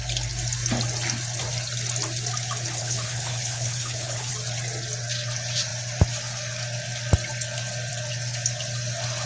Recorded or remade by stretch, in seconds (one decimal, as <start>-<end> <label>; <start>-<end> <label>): 0.0-2.8 recorded; 2.8-4.3 remade; 4.3-9.3 recorded